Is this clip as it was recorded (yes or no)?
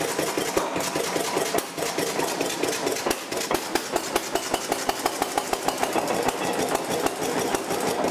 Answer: yes